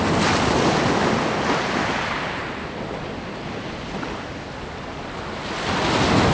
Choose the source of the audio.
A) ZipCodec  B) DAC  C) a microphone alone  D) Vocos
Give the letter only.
C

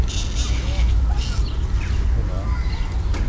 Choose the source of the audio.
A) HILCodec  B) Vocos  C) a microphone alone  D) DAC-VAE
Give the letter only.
C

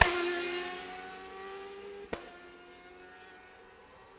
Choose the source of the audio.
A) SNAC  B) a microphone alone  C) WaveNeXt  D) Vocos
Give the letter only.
B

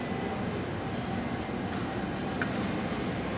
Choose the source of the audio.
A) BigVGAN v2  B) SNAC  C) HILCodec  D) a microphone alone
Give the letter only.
D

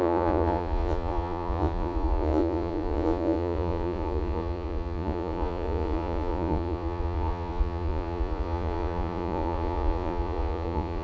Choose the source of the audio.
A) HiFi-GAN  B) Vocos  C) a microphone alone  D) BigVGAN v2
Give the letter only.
B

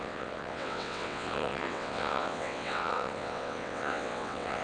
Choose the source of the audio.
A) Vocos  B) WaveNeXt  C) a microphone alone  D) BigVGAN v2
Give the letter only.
B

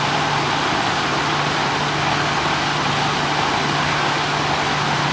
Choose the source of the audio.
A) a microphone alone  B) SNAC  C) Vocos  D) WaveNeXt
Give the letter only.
A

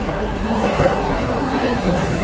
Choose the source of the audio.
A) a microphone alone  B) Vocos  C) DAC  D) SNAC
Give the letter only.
D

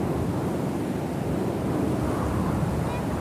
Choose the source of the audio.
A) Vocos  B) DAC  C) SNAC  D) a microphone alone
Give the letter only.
D